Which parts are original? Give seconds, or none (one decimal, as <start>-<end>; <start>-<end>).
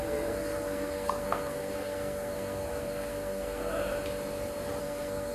3.7-4.8